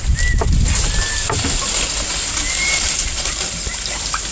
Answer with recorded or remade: recorded